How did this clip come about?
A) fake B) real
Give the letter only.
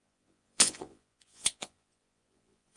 A